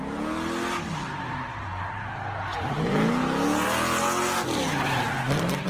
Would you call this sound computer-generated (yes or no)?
no